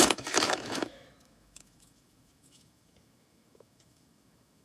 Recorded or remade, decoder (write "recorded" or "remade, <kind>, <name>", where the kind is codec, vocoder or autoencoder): remade, autoencoder, DAC-VAE